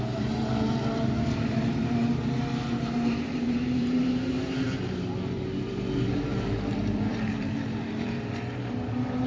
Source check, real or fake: fake